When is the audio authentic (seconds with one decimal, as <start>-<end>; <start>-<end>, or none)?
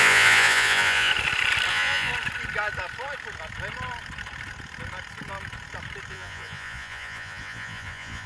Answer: 1.1-1.7; 2.1-6.1